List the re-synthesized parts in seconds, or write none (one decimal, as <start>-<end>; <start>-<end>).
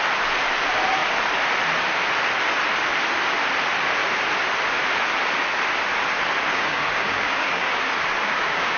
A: 6.5-7.8; 8.2-8.8